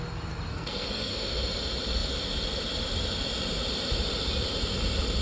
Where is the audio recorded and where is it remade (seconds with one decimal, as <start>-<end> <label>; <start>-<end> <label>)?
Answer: 0.0-0.5 recorded; 0.5-1.1 remade; 1.1-5.2 recorded